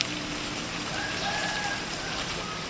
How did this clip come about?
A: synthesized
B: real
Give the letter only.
A